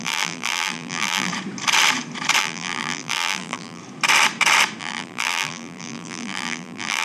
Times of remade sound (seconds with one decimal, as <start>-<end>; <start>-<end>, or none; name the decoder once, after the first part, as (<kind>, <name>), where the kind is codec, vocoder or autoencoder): 0.0-1.3 (vocoder, BigVGAN v2); 2.4-3.8; 4.8-7.0